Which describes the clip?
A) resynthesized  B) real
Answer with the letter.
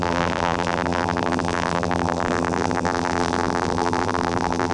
A